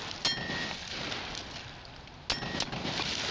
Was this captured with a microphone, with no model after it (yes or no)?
yes